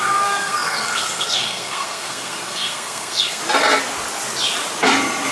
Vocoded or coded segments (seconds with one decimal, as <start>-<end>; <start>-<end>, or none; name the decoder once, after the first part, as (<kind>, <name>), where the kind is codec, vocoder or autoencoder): 0.0-3.4 (codec, SNAC)